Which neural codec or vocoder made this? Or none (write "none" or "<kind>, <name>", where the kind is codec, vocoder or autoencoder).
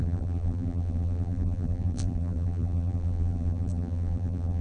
vocoder, BigVGAN v2